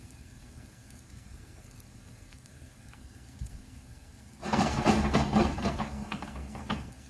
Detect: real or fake fake